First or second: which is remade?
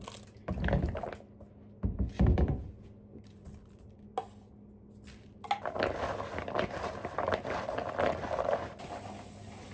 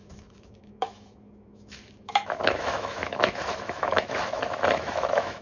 second